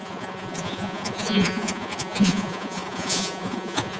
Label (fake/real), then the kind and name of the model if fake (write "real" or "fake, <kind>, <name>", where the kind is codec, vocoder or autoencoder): fake, vocoder, Vocos